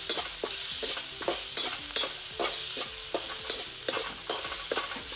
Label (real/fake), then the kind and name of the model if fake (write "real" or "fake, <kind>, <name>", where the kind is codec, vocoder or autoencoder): real